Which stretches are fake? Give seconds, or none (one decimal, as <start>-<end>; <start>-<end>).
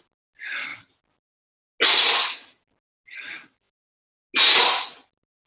none